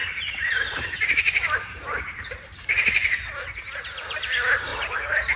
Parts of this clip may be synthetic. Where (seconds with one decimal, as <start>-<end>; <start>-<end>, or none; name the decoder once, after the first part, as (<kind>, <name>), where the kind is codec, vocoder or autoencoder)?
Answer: 0.0-3.2 (vocoder, BigVGAN v2); 4.7-5.4